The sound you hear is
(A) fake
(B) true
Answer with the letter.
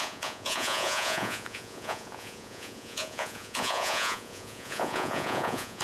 A